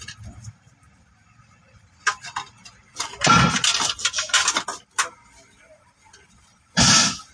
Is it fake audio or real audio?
real